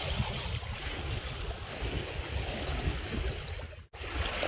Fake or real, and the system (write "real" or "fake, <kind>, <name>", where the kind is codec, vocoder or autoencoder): real